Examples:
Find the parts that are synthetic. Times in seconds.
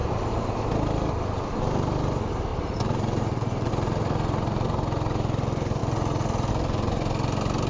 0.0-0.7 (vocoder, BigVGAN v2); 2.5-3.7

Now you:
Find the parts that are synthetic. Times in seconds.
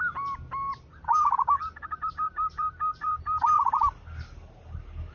0.7-3.8 (vocoder, BigVGAN v2)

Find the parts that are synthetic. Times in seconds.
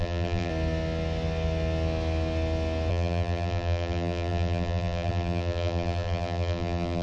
0.0-0.5 (vocoder, BigVGAN v2); 2.9-7.0